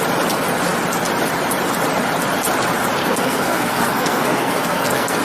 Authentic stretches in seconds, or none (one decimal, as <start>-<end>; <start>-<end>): 0.0-3.0